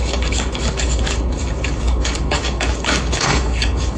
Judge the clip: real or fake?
fake